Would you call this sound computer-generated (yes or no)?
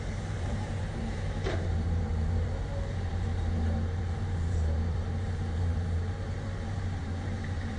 yes